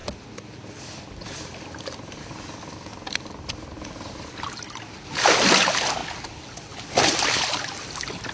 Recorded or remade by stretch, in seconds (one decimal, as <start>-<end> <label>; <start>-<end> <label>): 0.0-8.3 recorded